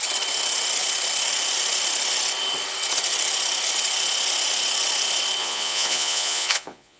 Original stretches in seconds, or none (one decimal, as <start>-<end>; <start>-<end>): 0.0-5.4